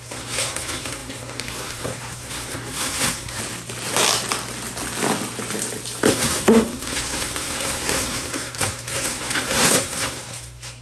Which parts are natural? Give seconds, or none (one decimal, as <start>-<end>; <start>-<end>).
3.4-6.1